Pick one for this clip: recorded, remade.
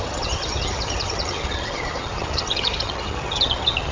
remade